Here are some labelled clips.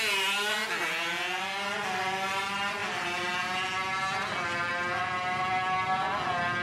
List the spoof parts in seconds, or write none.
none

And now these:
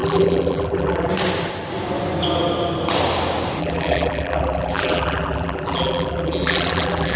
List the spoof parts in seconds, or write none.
0.0-1.1; 3.6-7.2